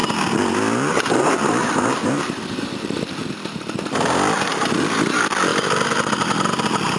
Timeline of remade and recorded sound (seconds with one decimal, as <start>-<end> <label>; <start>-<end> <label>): 0.0-1.5 recorded; 1.5-7.0 remade